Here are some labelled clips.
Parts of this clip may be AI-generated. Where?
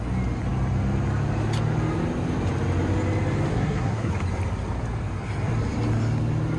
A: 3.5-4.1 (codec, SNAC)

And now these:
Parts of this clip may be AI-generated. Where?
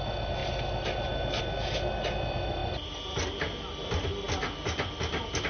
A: none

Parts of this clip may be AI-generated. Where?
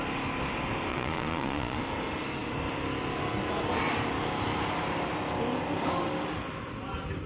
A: 0.9-1.8 (vocoder, Vocos)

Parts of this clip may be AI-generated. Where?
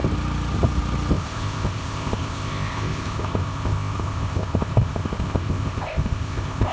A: 1.1-6.7 (codec, ZipCodec)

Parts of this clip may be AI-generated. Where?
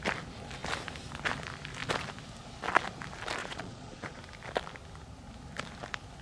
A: 3.4-4.2 (vocoder, Vocos)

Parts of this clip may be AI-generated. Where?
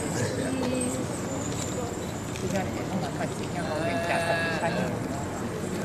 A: 0.0-2.4 (vocoder, BigVGAN v2); 5.1-5.8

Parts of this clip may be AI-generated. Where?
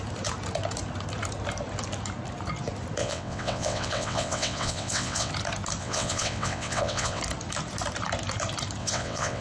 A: 3.0-5.3 (vocoder, WaveNeXt); 5.8-7.2; 8.8-9.4